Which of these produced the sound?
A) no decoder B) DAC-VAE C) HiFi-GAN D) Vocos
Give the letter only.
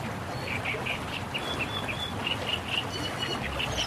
A